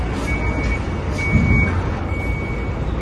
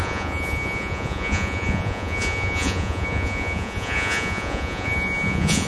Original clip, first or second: first